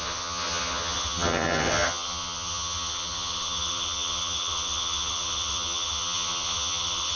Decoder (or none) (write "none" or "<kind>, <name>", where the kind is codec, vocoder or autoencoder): vocoder, HiFi-GAN